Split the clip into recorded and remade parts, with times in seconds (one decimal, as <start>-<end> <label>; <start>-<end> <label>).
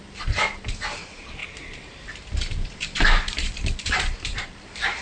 0.0-1.4 recorded; 1.4-4.4 remade; 4.4-5.0 recorded